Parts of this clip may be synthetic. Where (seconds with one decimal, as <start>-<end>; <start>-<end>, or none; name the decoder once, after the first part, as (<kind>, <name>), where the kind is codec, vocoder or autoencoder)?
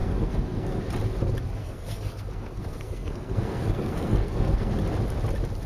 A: 0.0-0.8 (codec, SNAC); 1.6-4.7